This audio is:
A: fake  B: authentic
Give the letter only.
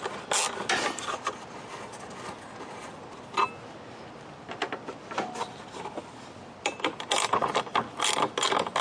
B